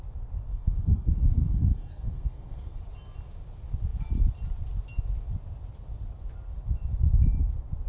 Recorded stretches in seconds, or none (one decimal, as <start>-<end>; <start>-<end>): 0.0-0.5; 2.8-7.9